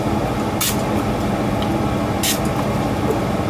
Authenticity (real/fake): real